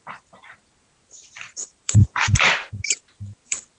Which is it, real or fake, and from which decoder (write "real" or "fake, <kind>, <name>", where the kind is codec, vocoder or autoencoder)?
fake, vocoder, BigVGAN v2